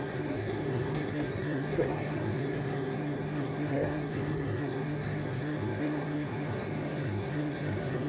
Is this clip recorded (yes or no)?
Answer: no